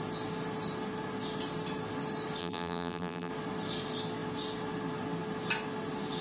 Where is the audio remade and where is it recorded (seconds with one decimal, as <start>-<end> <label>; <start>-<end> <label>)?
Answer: 0.0-2.4 recorded; 2.4-3.3 remade; 3.3-6.2 recorded